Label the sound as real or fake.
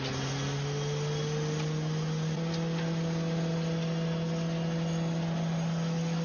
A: real